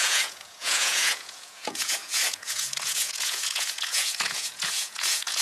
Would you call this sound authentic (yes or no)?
no